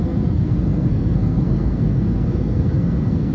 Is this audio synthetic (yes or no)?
yes